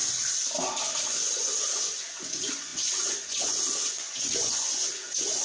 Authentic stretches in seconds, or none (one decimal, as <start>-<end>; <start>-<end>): 0.0-1.1